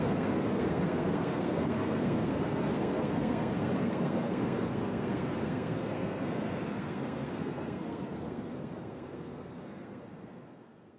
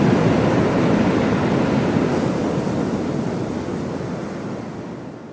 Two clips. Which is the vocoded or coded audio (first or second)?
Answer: first